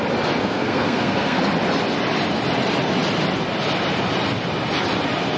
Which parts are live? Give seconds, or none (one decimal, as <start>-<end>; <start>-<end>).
0.0-0.4; 1.4-5.4